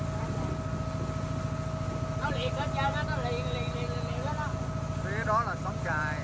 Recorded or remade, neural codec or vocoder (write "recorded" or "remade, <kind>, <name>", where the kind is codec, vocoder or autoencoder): recorded